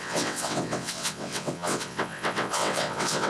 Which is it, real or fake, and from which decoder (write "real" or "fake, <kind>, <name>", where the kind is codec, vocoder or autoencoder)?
fake, vocoder, WaveNeXt